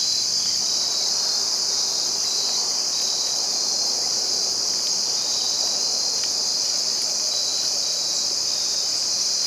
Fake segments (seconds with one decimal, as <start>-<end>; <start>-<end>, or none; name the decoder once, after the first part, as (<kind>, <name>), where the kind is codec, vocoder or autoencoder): none

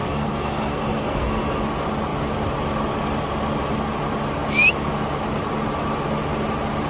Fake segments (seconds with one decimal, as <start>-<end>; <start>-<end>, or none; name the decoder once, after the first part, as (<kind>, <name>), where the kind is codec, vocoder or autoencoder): 0.0-1.6 (codec, SNAC)

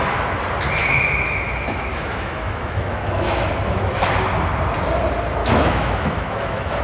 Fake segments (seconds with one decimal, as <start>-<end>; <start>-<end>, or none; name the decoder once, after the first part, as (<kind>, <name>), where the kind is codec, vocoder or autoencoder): 0.8-3.5 (autoencoder, DAC-VAE); 5.4-6.8

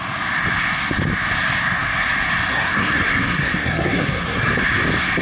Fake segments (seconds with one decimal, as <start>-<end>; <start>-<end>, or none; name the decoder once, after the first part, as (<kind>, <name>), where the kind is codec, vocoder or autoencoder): 2.5-4.5 (codec, SNAC)

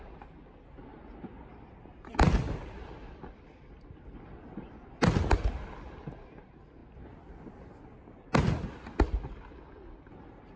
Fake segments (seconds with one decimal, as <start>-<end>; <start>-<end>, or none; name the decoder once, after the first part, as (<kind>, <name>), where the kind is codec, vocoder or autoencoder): none

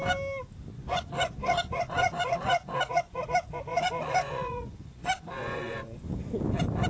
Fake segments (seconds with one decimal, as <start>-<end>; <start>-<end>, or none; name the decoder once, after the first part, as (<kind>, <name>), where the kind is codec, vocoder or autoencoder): 0.7-3.2 (vocoder, Vocos); 3.7-6.2